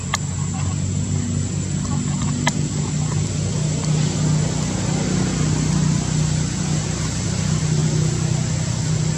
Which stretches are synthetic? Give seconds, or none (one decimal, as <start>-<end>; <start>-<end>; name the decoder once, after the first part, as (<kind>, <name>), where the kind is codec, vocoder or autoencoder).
none